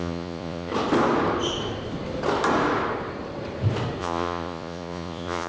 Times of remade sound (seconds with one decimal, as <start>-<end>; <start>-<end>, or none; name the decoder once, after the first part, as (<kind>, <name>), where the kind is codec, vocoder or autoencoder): 0.0-0.7 (vocoder, Vocos); 4.0-5.5